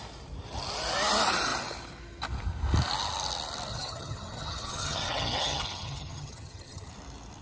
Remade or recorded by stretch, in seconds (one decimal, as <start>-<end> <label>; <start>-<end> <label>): 0.0-3.7 recorded; 3.7-6.9 remade; 6.9-7.4 recorded